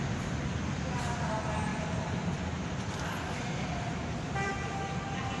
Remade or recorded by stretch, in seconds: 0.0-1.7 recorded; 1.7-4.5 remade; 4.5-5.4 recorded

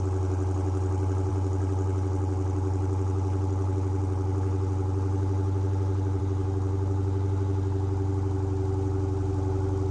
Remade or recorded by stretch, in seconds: 0.0-9.9 recorded